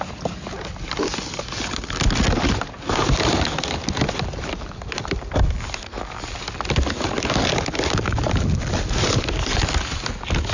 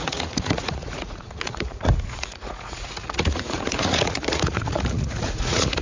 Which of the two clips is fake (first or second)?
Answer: second